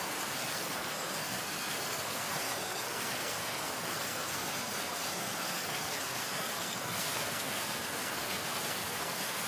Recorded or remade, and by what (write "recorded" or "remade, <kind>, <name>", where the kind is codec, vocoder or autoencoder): remade, codec, SNAC